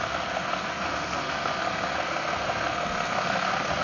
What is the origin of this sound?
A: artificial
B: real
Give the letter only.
A